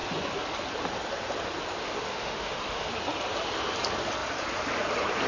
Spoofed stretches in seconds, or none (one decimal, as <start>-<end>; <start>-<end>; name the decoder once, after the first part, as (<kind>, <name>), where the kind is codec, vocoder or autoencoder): 1.8-2.9 (autoencoder, DAC-VAE)